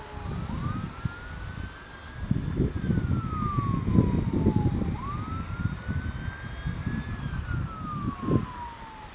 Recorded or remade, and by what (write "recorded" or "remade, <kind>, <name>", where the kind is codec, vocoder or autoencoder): recorded